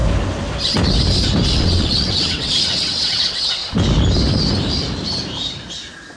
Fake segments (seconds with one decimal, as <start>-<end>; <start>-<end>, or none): 1.5-3.6